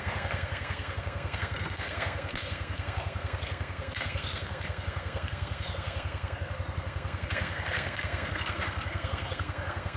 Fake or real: fake